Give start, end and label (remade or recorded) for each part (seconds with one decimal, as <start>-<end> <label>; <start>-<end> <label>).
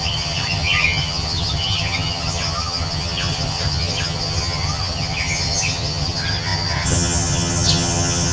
0.0-8.3 remade